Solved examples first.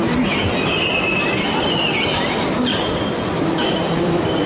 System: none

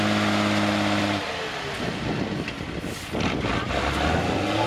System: none